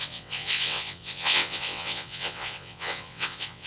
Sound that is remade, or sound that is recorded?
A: remade